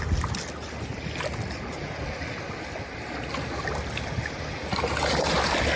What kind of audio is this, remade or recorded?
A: recorded